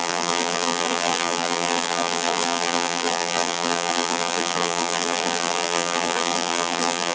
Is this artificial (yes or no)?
yes